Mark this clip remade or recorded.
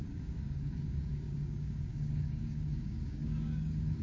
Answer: remade